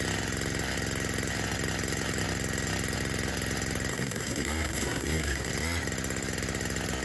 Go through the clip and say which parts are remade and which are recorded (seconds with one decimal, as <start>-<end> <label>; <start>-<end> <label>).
0.0-3.9 recorded; 3.9-5.5 remade; 5.5-7.0 recorded